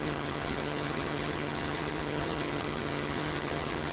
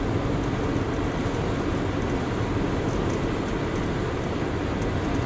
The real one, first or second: second